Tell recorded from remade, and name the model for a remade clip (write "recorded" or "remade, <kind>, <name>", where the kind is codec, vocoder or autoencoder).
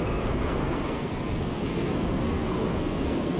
remade, codec, SNAC